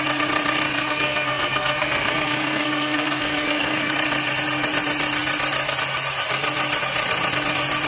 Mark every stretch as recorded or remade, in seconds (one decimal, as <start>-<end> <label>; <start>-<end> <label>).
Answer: 0.0-0.7 recorded; 0.7-3.9 remade; 3.9-7.9 recorded